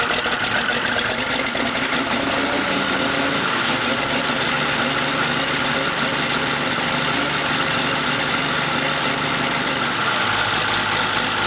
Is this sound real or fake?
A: real